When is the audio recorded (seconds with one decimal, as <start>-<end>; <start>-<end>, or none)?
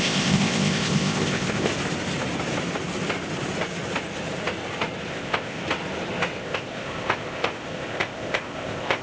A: 1.7-5.1; 5.6-6.4